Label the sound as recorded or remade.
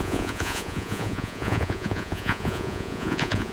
remade